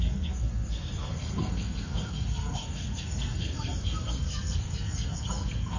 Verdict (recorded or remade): remade